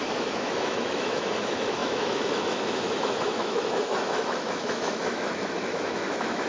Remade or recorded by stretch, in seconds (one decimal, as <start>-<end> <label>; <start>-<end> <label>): 0.0-6.5 remade